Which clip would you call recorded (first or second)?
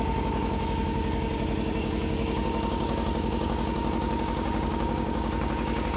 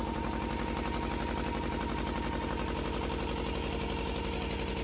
second